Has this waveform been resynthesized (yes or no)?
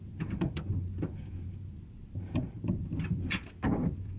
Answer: yes